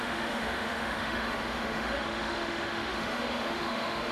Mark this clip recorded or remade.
remade